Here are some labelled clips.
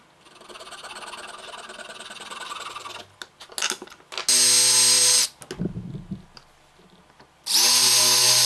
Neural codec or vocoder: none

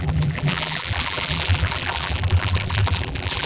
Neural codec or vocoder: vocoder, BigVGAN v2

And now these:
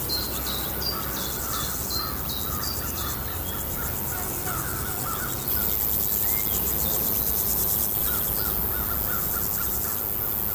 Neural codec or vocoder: none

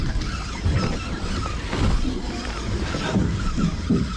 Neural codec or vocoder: none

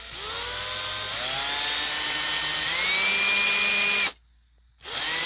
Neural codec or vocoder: none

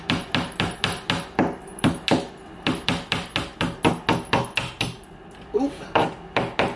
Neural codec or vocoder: none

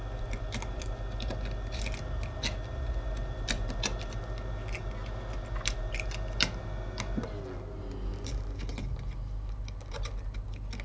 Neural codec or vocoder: none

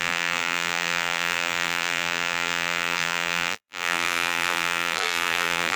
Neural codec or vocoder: vocoder, BigVGAN v2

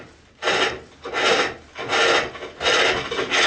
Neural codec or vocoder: none